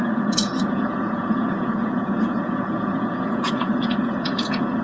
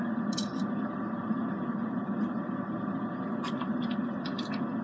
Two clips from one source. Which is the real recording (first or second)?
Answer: second